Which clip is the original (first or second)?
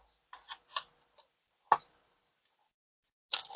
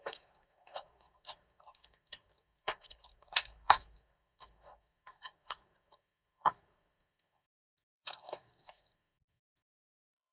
first